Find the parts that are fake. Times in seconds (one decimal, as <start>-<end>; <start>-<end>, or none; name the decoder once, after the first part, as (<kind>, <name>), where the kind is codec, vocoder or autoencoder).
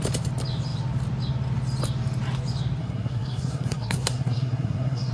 2.8-5.1 (codec, SNAC)